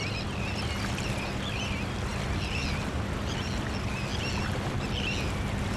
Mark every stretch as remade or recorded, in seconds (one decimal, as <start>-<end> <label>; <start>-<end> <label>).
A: 0.0-5.8 recorded